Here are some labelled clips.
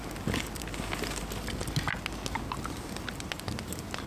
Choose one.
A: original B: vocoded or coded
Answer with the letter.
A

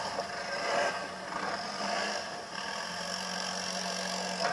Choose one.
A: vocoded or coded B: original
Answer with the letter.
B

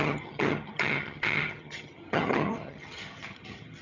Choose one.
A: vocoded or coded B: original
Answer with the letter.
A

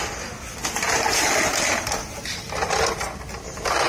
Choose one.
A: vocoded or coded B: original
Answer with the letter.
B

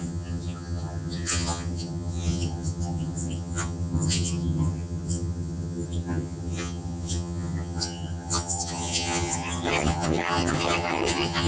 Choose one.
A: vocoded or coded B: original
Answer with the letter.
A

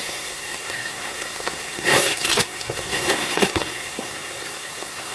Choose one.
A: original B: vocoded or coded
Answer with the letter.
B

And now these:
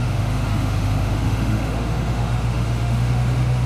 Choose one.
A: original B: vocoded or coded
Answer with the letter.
B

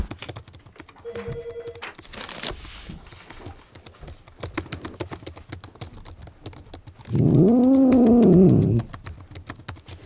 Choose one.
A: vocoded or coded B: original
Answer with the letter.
B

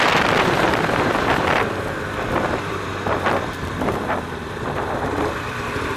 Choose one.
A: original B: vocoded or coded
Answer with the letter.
B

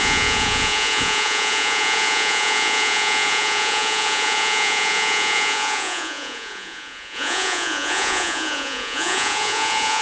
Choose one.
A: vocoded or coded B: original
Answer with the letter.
A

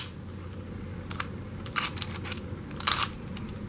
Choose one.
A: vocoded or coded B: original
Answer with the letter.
B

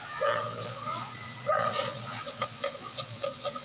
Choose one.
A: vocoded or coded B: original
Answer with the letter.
A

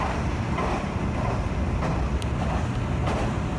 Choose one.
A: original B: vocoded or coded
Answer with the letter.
A